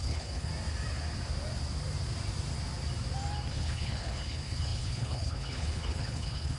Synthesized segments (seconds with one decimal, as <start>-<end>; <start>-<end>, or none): 0.0-0.5; 3.5-6.6